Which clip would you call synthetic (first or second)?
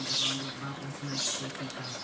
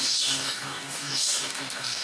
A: second